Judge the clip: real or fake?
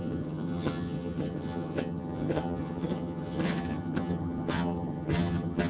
fake